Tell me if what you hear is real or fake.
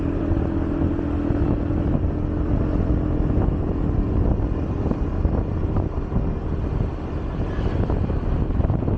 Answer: real